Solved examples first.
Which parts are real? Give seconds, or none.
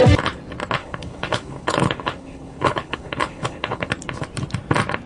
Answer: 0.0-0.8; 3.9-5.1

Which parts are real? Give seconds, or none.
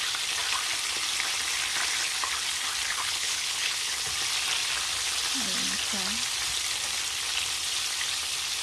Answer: 0.0-2.9; 4.0-8.6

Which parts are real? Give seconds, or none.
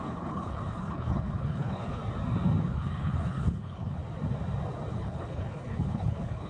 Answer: 2.0-2.6; 4.0-4.9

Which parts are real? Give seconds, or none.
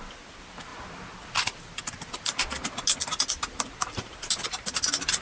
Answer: 0.0-5.2